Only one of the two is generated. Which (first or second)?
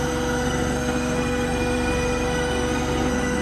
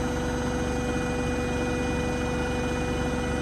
first